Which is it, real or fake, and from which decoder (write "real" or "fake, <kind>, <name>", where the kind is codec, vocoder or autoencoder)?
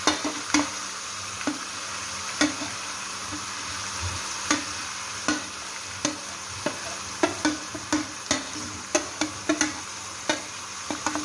real